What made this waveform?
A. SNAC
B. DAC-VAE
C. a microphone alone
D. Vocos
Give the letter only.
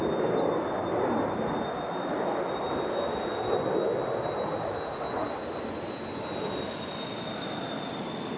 C